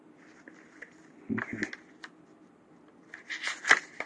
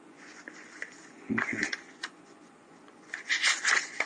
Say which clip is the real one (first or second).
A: first